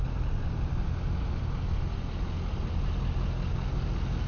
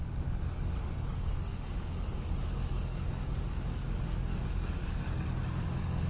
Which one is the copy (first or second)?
second